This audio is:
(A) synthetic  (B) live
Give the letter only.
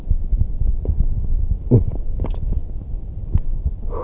B